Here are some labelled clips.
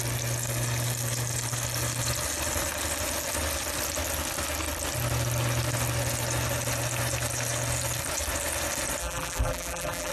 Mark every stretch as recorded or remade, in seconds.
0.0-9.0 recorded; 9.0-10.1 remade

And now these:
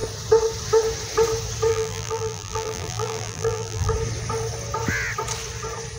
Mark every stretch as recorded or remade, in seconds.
0.0-1.7 recorded; 1.7-3.9 remade; 3.9-6.0 recorded

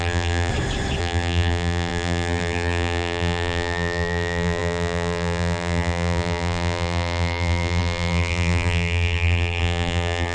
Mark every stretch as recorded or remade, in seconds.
0.0-0.5 remade; 0.5-1.0 recorded; 1.0-10.3 remade

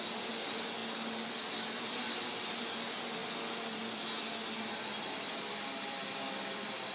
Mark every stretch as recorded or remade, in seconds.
0.0-0.8 remade; 0.8-1.3 recorded; 1.3-6.9 remade

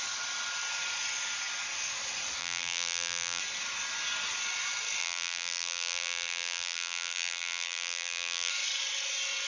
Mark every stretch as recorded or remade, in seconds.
0.0-2.4 recorded; 2.4-3.4 remade; 3.4-5.0 recorded; 5.0-8.5 remade; 8.5-9.5 recorded

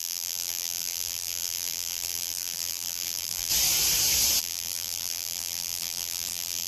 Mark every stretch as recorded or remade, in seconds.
0.0-3.5 remade; 3.5-4.4 recorded; 4.4-6.7 remade